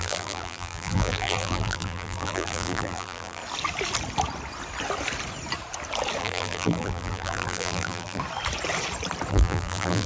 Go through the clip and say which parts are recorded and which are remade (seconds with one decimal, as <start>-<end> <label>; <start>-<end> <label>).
0.0-3.4 remade; 3.4-6.2 recorded; 6.2-8.2 remade; 8.2-9.3 recorded; 9.3-10.1 remade